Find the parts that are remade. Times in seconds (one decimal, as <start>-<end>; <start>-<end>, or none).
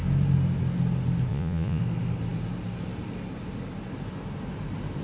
1.3-1.8